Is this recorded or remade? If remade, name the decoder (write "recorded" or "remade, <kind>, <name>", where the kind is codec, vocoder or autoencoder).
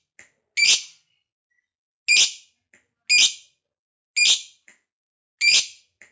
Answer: recorded